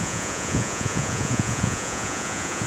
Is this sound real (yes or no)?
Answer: no